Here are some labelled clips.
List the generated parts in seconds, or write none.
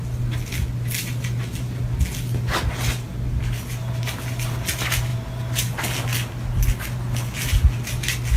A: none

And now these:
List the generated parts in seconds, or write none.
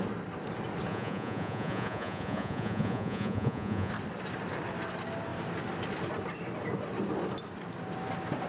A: 0.9-3.9 (vocoder, Vocos)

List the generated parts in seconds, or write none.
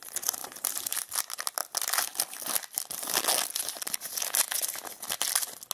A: 0.4-1.1 (vocoder, BigVGAN v2)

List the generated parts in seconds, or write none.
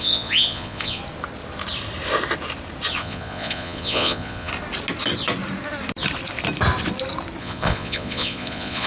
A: 0.0-1.0 (vocoder, Vocos); 3.0-4.5; 7.4-8.9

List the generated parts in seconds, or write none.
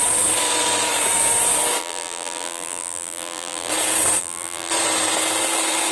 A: 1.8-3.7 (vocoder, BigVGAN v2); 4.2-4.7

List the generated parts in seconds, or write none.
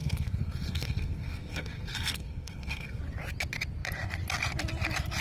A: 0.0-3.0 (codec, SNAC)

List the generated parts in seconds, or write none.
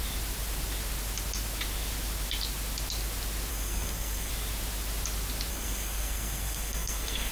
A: 3.5-4.3 (codec, SNAC); 5.5-7.3